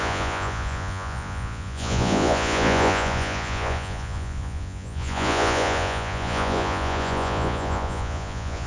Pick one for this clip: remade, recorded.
remade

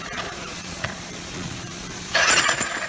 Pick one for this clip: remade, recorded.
remade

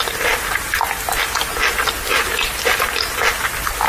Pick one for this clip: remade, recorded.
recorded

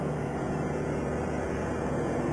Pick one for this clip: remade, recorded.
remade